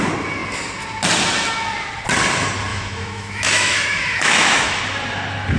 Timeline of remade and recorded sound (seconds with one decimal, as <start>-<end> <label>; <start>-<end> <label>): 0.0-2.7 recorded; 2.7-4.8 remade; 4.8-5.6 recorded